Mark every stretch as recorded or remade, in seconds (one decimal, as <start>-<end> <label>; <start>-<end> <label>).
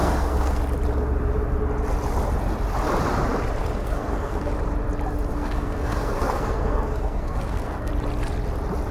0.0-0.6 remade; 0.6-3.6 recorded; 3.6-4.5 remade; 4.5-5.3 recorded; 5.3-7.9 remade; 7.9-8.9 recorded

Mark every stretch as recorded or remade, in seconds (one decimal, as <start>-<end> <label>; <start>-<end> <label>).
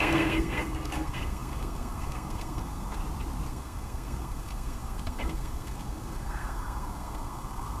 0.0-3.0 remade; 3.0-3.5 recorded; 3.5-7.8 remade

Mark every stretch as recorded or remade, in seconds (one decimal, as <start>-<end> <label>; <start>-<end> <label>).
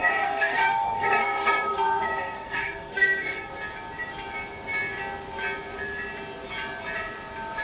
0.0-3.5 remade; 3.5-7.6 recorded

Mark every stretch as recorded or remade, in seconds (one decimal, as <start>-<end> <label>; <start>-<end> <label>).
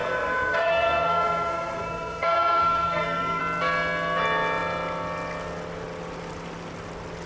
0.0-3.4 remade; 3.4-7.3 recorded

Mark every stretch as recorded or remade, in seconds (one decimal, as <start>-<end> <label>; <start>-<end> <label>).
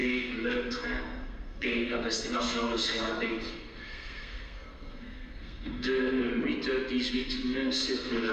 0.0-6.3 remade; 6.3-7.1 recorded; 7.1-8.3 remade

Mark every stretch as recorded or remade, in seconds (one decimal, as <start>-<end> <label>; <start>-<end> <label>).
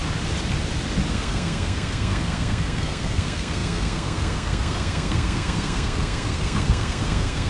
0.0-1.1 recorded; 1.1-7.5 remade